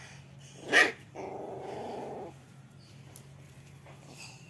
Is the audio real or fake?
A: real